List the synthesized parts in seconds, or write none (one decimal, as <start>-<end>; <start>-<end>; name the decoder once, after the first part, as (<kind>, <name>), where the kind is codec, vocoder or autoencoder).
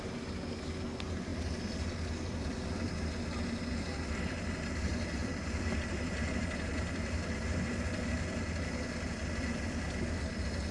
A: none